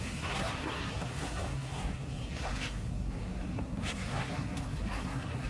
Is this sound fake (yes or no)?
yes